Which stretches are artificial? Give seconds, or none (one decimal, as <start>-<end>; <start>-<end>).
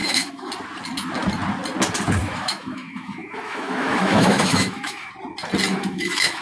0.0-0.5; 2.2-5.1; 5.7-6.4